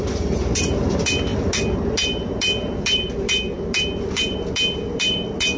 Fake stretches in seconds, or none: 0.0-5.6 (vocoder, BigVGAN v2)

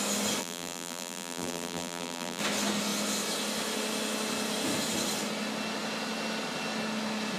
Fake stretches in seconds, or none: 0.4-2.4 (vocoder, BigVGAN v2)

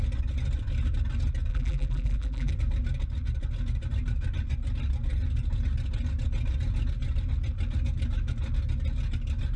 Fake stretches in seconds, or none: 1.5-2.5 (vocoder, BigVGAN v2)

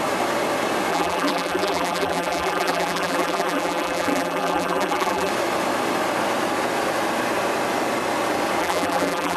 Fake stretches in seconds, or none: 0.9-5.3 (vocoder, BigVGAN v2); 8.6-9.4

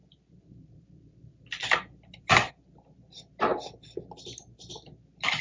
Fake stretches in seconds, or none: 0.0-2.5 (vocoder, BigVGAN v2)

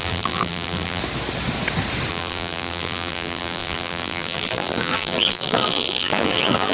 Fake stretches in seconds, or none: 0.0-1.0 (vocoder, BigVGAN v2); 2.1-6.7

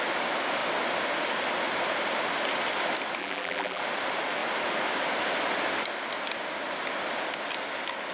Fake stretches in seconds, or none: 3.2-3.8 (vocoder, BigVGAN v2)

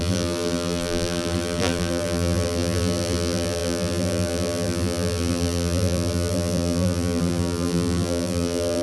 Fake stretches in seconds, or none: 0.0-8.8 (vocoder, BigVGAN v2)